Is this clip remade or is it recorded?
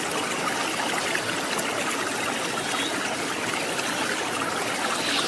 recorded